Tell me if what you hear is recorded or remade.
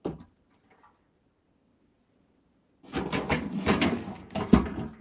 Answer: remade